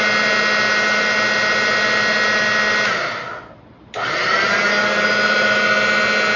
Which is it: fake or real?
real